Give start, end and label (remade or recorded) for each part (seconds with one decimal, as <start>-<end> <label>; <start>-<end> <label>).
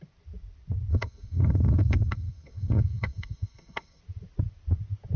0.0-0.9 recorded; 0.9-4.0 remade; 4.0-5.2 recorded